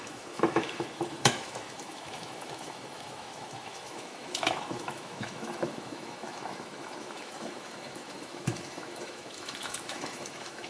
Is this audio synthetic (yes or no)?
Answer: yes